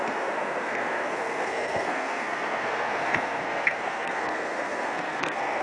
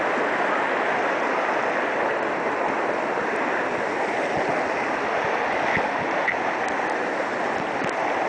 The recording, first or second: second